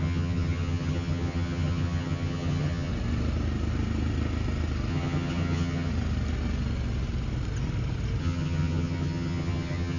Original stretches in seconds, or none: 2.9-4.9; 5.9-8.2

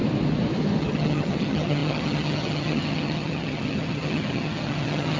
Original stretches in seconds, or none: 0.0-0.8

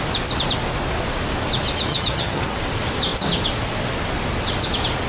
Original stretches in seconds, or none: 0.0-1.9; 2.6-5.1

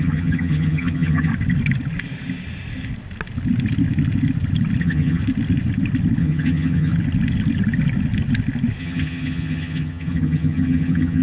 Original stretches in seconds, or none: 1.3-4.8; 5.2-6.2; 6.9-8.8

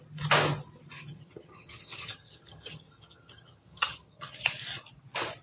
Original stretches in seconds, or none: 0.0-1.1; 4.2-5.4

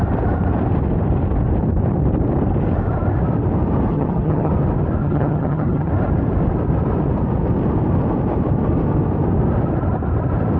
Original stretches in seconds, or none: 0.0-3.9; 4.5-5.0; 5.9-10.6